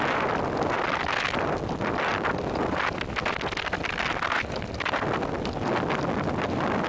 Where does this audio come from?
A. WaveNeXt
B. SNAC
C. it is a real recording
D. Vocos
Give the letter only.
C